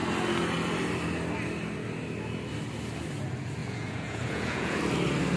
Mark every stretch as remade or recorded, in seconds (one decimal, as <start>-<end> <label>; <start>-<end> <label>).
0.0-3.6 recorded; 3.6-4.8 remade; 4.8-5.4 recorded